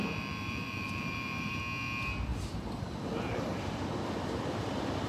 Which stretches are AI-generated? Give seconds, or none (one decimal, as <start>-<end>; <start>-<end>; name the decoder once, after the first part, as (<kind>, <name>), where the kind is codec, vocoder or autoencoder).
0.0-1.6 (vocoder, BigVGAN v2); 2.3-3.6